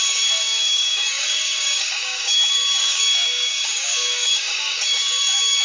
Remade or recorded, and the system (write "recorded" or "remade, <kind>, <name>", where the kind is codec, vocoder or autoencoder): remade, codec, DAC